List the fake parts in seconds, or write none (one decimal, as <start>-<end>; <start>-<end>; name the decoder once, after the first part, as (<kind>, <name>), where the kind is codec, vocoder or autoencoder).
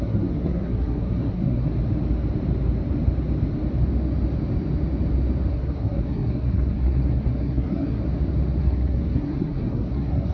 0.0-1.7 (codec, SNAC); 5.5-8.0; 8.6-10.3